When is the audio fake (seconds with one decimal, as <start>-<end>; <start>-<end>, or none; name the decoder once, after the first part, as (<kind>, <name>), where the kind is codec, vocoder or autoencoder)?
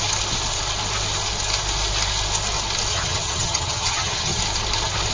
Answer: 2.9-4.4 (vocoder, HiFi-GAN)